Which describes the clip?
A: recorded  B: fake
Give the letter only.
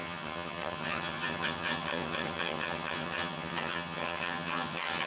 B